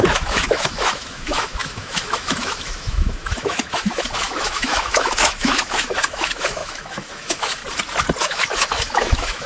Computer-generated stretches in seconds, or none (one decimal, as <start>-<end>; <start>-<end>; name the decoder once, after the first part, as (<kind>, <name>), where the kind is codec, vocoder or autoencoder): 0.0-7.6 (autoencoder, DAC-VAE); 8.2-9.5